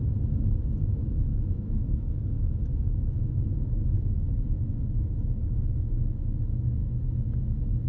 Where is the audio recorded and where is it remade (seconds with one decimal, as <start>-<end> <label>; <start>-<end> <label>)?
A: 0.0-1.0 recorded; 1.0-4.8 remade; 4.8-7.9 recorded